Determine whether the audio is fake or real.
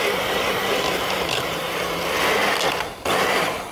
real